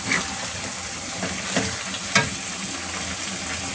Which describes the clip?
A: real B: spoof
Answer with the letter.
A